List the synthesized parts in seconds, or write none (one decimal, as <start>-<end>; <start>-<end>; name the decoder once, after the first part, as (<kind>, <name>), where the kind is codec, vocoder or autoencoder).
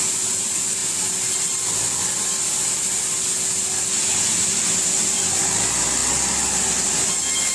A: none